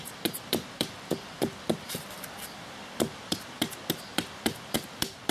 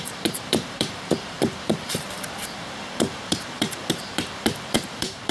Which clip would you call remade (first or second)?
second